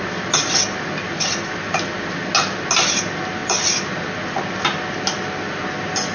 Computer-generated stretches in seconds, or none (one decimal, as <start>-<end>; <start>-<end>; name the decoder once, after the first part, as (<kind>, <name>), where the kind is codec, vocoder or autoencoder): none